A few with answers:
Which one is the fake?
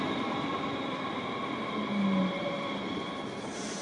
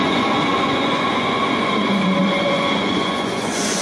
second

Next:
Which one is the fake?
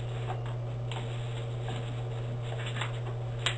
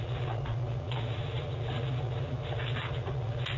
second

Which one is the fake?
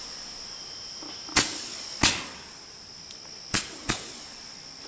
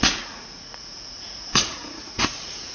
second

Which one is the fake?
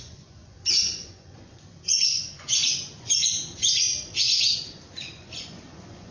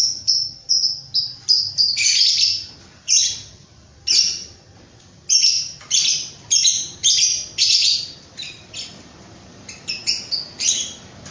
first